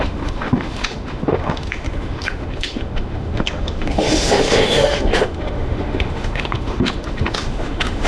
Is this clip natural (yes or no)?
no